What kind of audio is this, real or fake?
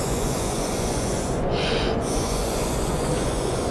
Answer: fake